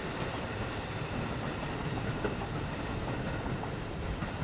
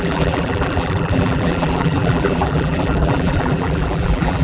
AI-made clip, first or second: second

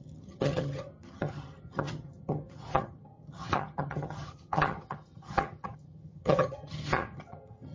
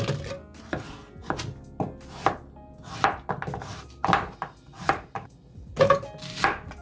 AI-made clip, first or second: first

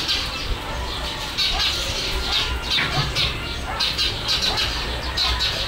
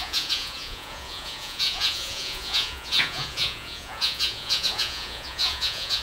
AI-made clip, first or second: second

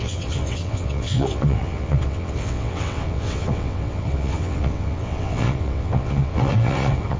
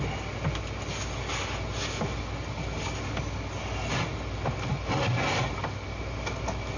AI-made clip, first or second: first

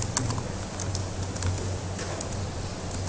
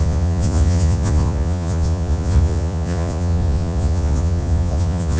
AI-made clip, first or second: second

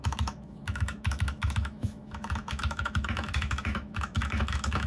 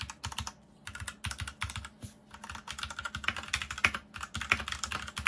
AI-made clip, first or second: first